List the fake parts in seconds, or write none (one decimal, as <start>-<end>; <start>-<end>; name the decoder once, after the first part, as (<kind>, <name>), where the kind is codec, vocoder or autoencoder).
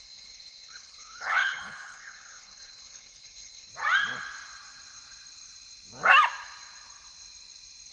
0.0-3.7 (codec, HILCodec)